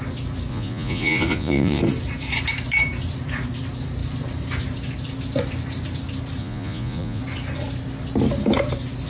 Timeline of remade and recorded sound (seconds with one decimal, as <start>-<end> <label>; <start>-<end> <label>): 0.0-0.5 recorded; 0.5-1.8 remade; 1.8-6.4 recorded; 6.4-7.2 remade; 7.2-9.1 recorded